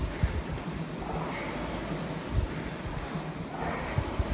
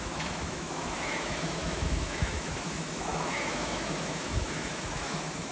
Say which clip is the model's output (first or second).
second